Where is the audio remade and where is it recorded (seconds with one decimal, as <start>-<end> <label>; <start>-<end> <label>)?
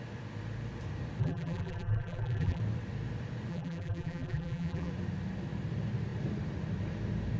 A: 0.0-1.2 recorded; 1.2-2.6 remade; 2.6-3.5 recorded; 3.5-4.9 remade; 4.9-7.4 recorded